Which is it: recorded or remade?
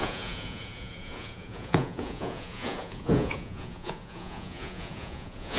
remade